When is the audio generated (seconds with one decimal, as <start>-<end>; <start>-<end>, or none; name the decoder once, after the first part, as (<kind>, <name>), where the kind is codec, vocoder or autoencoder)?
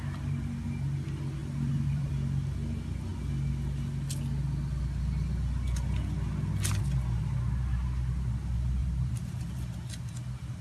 1.4-2.1 (vocoder, BigVGAN v2); 8.8-9.4